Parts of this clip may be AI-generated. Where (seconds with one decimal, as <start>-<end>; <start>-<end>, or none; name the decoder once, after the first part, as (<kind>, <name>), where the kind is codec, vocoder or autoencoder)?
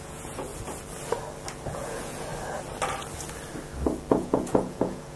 0.0-0.5 (vocoder, Vocos); 1.7-2.3; 4.1-5.2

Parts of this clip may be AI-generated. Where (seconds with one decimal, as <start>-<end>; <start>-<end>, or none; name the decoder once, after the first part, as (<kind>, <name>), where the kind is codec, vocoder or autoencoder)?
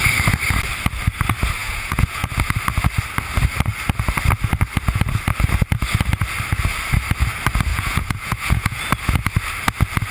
1.6-2.3 (vocoder, Vocos); 7.7-8.8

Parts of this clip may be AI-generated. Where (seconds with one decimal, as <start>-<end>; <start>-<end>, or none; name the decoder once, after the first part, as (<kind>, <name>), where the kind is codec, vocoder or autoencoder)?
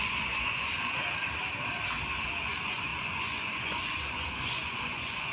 0.0-1.0 (vocoder, Vocos); 2.4-5.3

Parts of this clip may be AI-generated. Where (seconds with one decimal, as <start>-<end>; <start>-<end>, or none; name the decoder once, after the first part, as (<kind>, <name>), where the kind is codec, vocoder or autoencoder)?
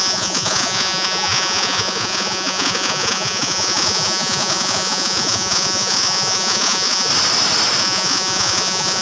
0.0-7.1 (vocoder, Vocos); 7.8-9.0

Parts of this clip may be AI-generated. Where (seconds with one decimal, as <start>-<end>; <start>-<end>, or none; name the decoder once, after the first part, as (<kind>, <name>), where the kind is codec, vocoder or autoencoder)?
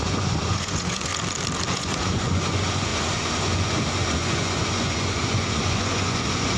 0.0-1.1 (vocoder, Vocos); 1.7-6.6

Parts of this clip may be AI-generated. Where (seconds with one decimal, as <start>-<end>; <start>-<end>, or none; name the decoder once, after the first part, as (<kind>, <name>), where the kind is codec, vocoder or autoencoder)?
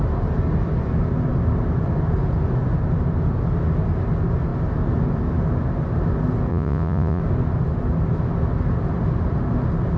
6.5-7.2 (vocoder, Vocos)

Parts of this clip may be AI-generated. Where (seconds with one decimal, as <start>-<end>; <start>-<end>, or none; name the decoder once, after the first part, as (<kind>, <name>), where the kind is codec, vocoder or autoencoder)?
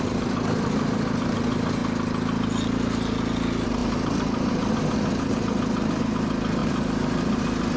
none